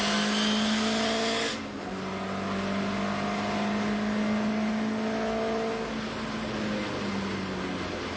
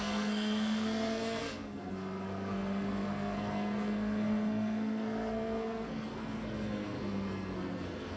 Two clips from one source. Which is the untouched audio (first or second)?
first